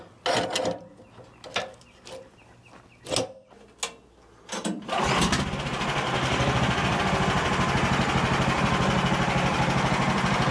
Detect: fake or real real